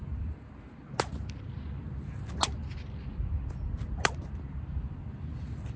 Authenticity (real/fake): real